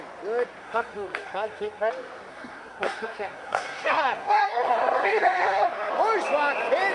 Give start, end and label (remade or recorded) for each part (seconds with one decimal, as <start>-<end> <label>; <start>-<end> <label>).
0.0-0.6 recorded; 0.6-1.9 remade; 1.9-2.3 recorded; 2.3-5.9 remade; 5.9-6.9 recorded